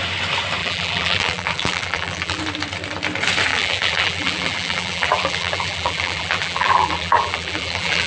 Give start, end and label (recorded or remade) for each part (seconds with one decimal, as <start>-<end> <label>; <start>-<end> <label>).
0.0-0.6 recorded; 0.6-2.4 remade; 2.4-3.5 recorded; 3.5-8.1 remade